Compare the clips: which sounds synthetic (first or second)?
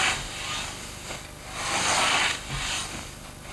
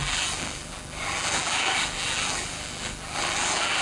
second